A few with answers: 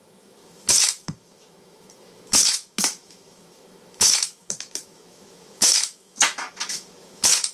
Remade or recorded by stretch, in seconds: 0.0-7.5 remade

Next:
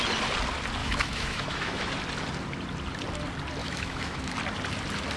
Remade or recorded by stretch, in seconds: 0.0-0.8 recorded; 0.8-1.9 remade; 1.9-3.6 recorded; 3.6-4.3 remade; 4.3-5.2 recorded

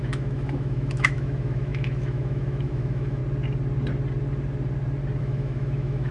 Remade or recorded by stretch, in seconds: 0.0-3.2 remade; 3.2-5.2 recorded; 5.2-6.1 remade

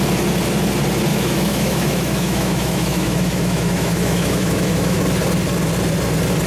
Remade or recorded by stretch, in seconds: 0.0-1.1 recorded; 1.1-5.0 remade; 5.0-6.5 recorded

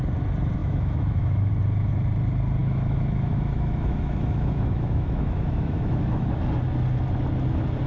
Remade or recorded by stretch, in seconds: 0.0-0.6 recorded; 0.6-1.5 remade; 1.5-2.6 recorded; 2.6-6.4 remade; 6.4-7.9 recorded

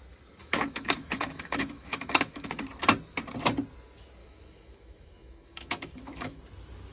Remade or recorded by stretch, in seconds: 0.0-0.4 recorded; 0.4-2.5 remade; 2.5-4.2 recorded; 4.2-6.4 remade; 6.4-6.9 recorded